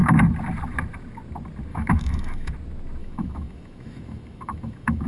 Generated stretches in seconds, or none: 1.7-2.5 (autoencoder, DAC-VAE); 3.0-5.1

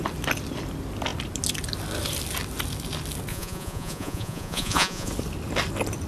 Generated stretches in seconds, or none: 3.3-5.1 (vocoder, Vocos)